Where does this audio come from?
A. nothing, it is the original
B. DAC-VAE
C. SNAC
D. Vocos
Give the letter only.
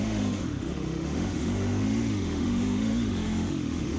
B